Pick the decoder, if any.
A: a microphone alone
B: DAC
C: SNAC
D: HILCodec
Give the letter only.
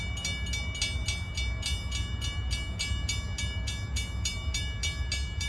A